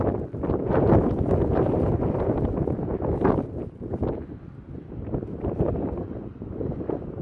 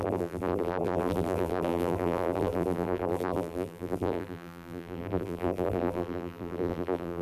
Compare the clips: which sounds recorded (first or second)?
first